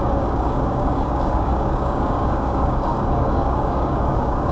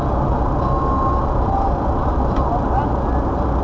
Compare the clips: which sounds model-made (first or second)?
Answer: first